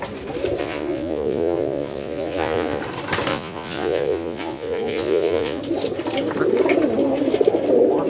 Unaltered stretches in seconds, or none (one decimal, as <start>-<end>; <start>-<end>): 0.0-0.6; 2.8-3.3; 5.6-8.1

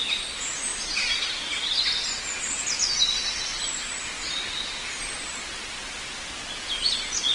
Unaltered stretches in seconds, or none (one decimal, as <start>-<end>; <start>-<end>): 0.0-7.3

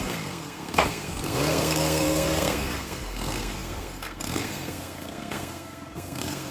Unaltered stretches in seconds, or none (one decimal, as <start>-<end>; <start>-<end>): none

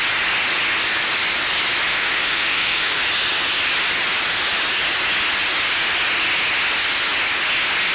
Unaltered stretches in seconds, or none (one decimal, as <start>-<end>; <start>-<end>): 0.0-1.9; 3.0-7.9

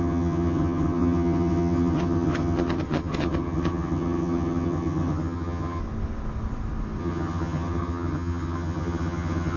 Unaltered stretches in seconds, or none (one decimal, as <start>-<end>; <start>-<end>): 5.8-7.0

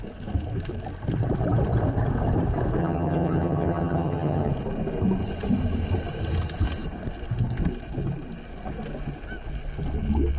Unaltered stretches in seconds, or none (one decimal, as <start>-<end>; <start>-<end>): 0.0-2.8; 4.5-10.4